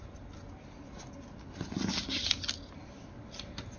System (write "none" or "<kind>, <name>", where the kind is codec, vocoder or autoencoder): none